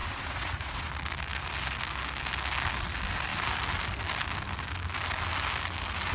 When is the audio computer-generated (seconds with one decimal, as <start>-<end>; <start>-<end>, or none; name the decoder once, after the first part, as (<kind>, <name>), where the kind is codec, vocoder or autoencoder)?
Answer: 0.0-0.9 (vocoder, Vocos)